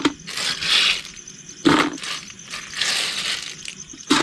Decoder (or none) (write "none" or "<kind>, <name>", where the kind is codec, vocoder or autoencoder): none